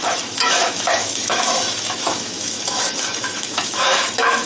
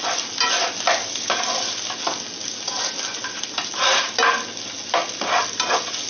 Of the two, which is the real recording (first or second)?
second